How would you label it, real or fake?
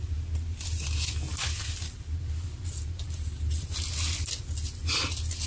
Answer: real